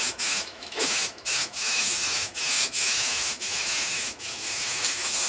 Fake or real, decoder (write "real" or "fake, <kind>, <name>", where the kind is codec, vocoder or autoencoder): fake, autoencoder, DAC-VAE